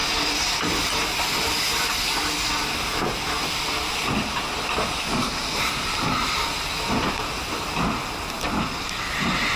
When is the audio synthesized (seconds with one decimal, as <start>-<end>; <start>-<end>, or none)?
none